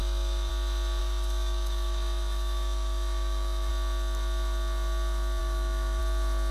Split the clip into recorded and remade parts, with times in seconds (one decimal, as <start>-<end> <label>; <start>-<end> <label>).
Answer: 0.0-0.5 remade; 0.5-1.0 recorded; 1.0-3.7 remade; 3.7-5.4 recorded; 5.4-6.0 remade; 6.0-6.5 recorded